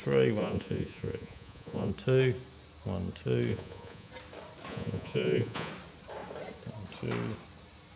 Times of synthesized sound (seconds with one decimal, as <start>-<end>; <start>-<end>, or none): 0.4-1.9; 3.5-4.1; 4.7-5.7